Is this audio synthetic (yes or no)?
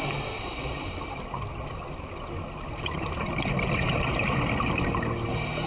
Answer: no